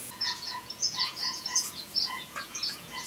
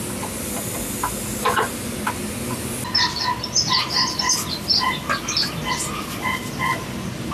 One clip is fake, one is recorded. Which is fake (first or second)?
first